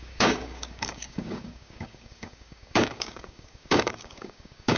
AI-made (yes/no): yes